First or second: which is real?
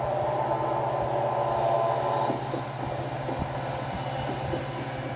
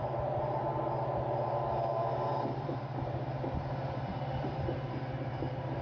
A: first